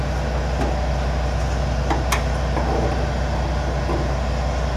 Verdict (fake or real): real